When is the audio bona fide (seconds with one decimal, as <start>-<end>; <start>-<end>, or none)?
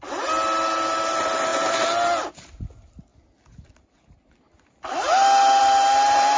0.0-6.4